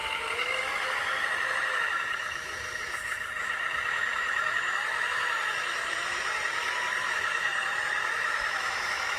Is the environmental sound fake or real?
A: fake